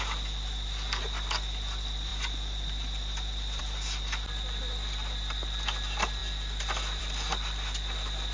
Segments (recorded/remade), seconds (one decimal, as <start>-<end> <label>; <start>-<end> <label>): 0.0-8.3 recorded

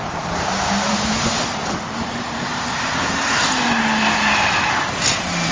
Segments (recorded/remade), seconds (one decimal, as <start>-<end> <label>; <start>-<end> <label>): 0.0-3.1 remade; 3.1-5.5 recorded

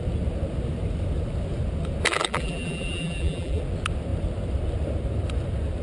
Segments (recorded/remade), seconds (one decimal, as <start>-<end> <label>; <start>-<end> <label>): 0.0-2.1 recorded; 2.1-3.6 remade; 3.6-5.8 recorded

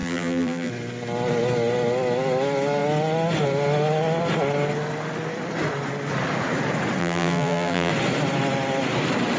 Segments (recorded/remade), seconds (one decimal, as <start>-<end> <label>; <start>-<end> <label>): 0.0-0.7 remade; 0.7-7.0 recorded; 7.0-7.9 remade; 7.9-9.4 recorded